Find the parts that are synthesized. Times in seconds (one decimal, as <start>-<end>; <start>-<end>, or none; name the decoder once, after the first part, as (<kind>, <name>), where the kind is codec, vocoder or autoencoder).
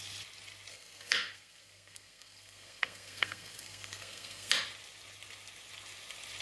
0.7-4.5 (codec, SNAC)